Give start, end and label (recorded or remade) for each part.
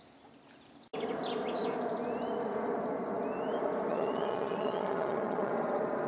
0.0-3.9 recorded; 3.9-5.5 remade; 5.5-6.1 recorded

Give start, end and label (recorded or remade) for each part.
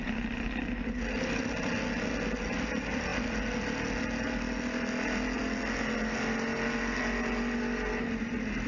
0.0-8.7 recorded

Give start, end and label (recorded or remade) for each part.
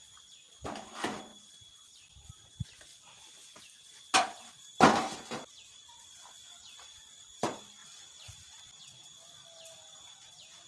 0.0-10.7 recorded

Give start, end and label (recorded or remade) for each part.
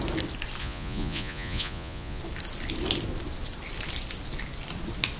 0.0-0.6 recorded; 0.6-2.2 remade; 2.2-5.2 recorded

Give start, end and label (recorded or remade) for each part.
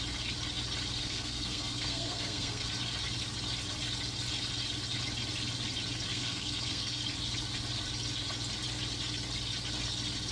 0.0-1.0 recorded; 1.0-2.7 remade; 2.7-6.1 recorded; 6.1-7.0 remade; 7.0-10.3 recorded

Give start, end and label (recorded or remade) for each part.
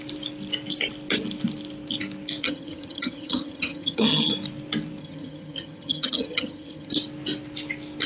0.0-2.4 recorded; 2.4-4.3 remade; 4.3-5.0 recorded; 5.0-6.9 remade; 6.9-8.1 recorded